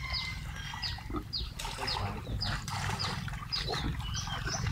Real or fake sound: real